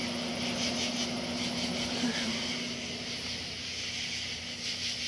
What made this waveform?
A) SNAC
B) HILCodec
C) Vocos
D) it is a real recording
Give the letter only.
D